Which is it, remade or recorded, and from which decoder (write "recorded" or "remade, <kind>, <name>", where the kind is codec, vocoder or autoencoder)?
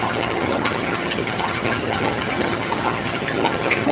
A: remade, vocoder, HiFi-GAN